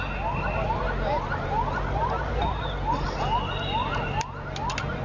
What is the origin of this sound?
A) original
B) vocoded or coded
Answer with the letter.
A